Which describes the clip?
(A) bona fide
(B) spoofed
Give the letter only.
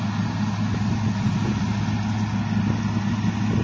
A